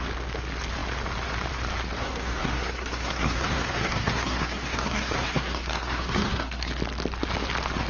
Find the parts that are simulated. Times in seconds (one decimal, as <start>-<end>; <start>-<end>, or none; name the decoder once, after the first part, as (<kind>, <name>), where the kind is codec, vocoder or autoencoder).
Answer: 2.0-6.7 (codec, SNAC)